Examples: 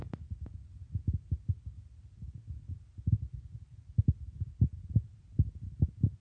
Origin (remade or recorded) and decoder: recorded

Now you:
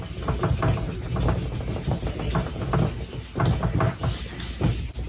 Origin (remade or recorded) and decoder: recorded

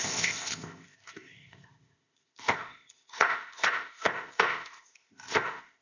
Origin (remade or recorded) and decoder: remade, codec, ZipCodec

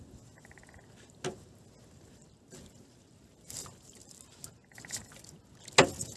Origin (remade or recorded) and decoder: recorded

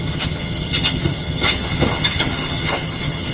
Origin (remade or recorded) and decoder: remade, vocoder, HiFi-GAN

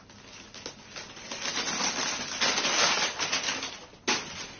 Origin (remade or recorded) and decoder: recorded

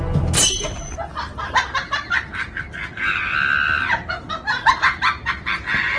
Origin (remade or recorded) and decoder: recorded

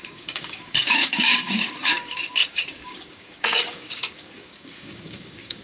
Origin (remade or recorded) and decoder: remade, codec, DAC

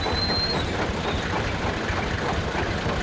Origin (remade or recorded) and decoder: recorded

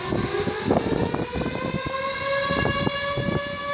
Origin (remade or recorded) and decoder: recorded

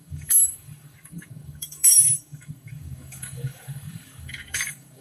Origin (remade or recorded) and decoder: remade, codec, DAC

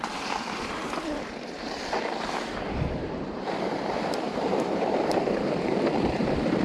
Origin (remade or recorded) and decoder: remade, vocoder, BigVGAN v2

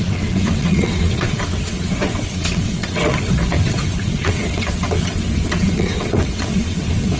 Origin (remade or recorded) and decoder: remade, vocoder, WaveNeXt